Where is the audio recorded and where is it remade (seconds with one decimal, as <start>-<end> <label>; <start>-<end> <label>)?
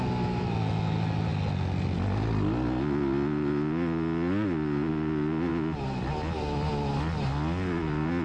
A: 0.0-8.2 recorded